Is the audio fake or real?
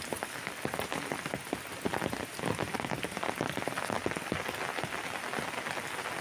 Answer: real